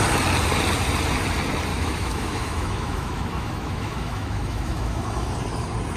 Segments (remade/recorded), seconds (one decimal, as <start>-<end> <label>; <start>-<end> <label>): 0.0-1.7 recorded; 1.7-5.3 remade; 5.3-6.0 recorded